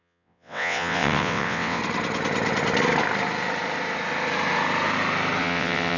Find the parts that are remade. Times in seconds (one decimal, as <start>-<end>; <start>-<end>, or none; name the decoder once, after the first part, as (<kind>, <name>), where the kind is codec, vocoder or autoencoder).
0.0-1.8 (vocoder, WaveNeXt); 5.4-6.0